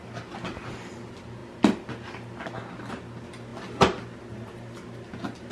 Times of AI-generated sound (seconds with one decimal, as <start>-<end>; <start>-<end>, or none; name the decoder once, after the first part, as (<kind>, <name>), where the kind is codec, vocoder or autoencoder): none